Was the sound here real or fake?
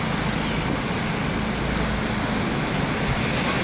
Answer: real